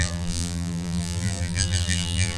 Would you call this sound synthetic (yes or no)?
yes